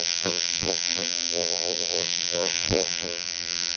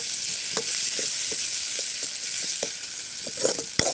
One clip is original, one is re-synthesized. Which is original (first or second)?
second